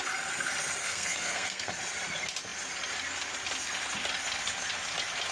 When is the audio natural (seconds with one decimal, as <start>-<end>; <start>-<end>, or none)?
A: 0.0-0.8; 1.7-5.3